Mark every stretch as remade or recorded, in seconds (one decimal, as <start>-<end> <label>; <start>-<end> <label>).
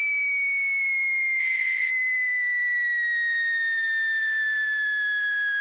0.0-1.4 recorded; 1.4-1.9 remade; 1.9-5.6 recorded